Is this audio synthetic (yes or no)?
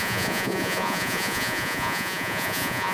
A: yes